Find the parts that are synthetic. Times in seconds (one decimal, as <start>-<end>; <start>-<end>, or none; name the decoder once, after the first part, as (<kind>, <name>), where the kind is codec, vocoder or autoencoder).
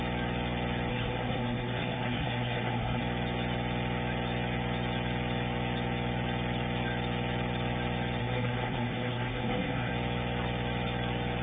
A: 0.9-3.0 (codec, SNAC); 8.2-9.9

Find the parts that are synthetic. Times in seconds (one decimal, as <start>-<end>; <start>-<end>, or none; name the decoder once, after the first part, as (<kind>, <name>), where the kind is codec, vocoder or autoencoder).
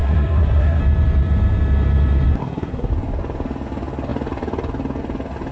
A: 0.0-0.8 (codec, SNAC); 2.4-2.9